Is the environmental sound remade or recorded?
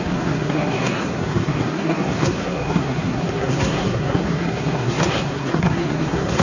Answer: remade